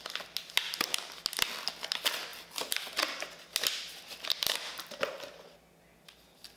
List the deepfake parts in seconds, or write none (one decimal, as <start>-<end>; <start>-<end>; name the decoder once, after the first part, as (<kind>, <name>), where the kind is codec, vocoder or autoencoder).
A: none